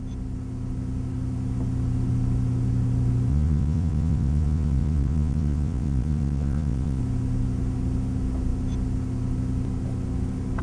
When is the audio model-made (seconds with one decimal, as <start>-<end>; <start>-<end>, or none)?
3.3-7.0